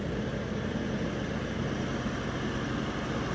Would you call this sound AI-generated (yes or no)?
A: no